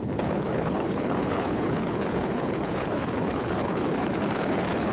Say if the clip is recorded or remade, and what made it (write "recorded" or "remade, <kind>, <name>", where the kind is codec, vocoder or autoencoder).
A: remade, codec, HILCodec